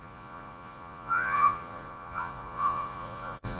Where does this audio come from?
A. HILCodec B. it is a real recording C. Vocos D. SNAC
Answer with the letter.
C